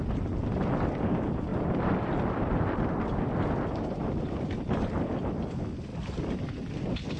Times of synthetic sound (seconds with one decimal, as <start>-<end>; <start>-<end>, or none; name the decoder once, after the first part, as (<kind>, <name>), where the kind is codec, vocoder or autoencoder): 1.5-2.9 (vocoder, BigVGAN v2)